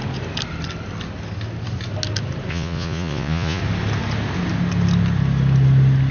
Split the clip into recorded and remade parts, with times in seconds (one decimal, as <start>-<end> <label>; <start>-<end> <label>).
0.0-2.5 recorded; 2.5-3.6 remade; 3.6-6.1 recorded